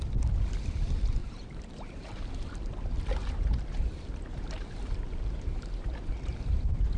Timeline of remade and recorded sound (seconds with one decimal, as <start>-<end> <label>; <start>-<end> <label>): 0.0-1.2 recorded; 1.2-2.3 remade; 2.3-3.2 recorded; 3.2-5.5 remade; 5.5-6.3 recorded; 6.3-7.0 remade